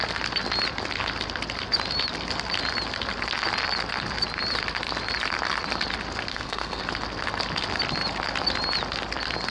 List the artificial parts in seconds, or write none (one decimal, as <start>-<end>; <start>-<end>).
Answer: 6.3-6.8